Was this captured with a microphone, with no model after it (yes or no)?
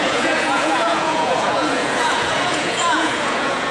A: no